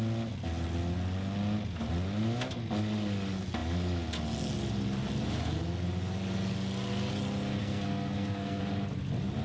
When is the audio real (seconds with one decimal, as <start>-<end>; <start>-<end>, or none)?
0.0-7.6; 8.6-9.4